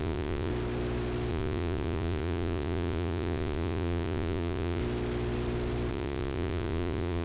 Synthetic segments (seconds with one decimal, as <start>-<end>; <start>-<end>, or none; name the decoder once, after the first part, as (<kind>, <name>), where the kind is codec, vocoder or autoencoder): 0.0-0.5 (vocoder, Vocos); 1.3-4.8; 5.9-7.2